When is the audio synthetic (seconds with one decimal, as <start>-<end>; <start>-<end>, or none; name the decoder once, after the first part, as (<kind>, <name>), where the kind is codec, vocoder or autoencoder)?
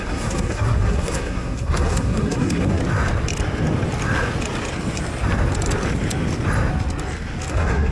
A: 0.0-2.8 (codec, SNAC); 7.5-7.9